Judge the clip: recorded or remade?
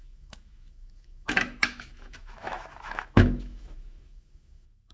remade